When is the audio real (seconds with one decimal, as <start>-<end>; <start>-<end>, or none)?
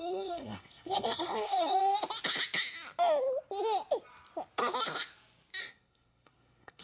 1.8-5.6